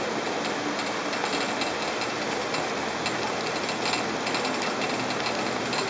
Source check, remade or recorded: recorded